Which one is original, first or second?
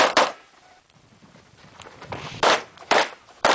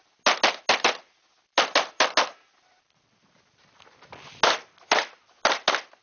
second